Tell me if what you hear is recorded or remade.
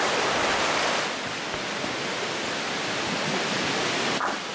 recorded